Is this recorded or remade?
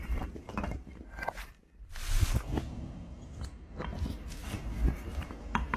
recorded